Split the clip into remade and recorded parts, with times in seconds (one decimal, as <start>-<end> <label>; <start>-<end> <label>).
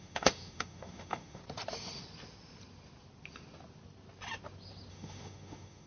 0.0-1.4 remade; 1.4-4.9 recorded; 4.9-5.9 remade